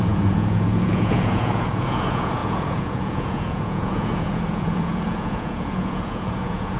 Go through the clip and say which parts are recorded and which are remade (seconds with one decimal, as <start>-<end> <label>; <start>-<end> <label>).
0.0-6.8 remade